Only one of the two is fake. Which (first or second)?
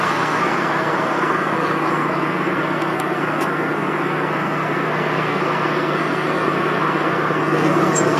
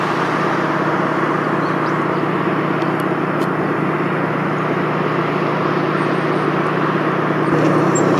first